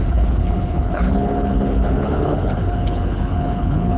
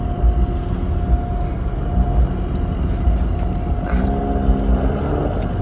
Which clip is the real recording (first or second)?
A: second